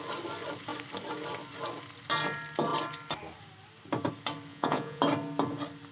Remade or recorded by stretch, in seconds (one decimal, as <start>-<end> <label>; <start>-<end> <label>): 0.0-4.5 recorded; 4.5-5.0 remade; 5.0-5.9 recorded